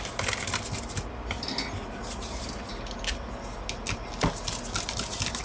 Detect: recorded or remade recorded